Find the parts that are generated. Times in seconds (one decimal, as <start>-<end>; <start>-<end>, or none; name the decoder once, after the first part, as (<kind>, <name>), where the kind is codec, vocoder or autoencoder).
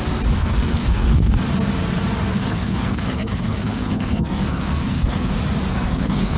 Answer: 0.4-1.3 (codec, SNAC); 2.3-5.3; 5.7-6.4